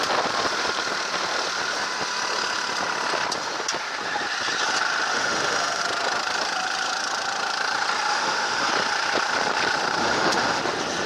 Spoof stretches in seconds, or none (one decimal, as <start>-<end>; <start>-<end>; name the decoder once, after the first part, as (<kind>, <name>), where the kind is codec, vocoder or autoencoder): 5.1-5.8 (autoencoder, DAC-VAE); 8.1-8.7; 10.0-10.6